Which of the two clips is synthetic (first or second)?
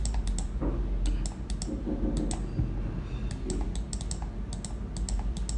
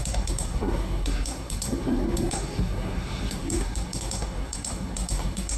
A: second